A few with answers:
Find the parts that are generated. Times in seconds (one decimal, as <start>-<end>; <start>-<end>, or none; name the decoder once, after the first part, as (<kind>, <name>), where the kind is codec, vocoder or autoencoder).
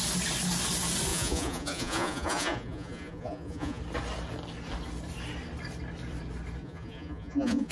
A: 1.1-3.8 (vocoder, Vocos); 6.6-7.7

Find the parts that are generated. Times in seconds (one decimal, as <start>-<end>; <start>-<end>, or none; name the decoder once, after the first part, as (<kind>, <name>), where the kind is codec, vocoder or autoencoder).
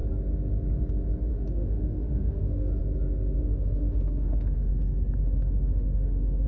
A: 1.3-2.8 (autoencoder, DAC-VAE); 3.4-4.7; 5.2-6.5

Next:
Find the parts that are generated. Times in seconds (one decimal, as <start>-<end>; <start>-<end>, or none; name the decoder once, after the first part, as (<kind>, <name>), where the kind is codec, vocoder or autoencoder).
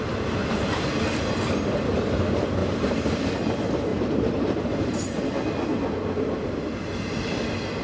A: 0.4-1.0 (vocoder, BigVGAN v2); 2.6-3.2; 3.9-5.2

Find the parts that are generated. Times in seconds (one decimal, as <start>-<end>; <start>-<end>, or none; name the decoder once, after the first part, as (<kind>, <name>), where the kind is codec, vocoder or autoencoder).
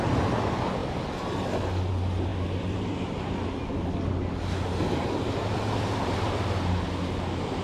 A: none